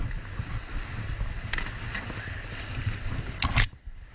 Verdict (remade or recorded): recorded